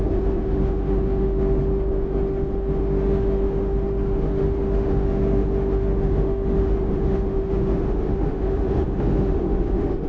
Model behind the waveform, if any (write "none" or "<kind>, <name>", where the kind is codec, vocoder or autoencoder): autoencoder, DAC-VAE